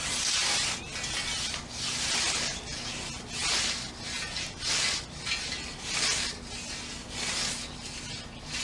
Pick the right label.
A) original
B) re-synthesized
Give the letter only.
A